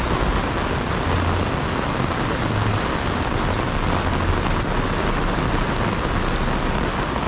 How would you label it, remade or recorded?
recorded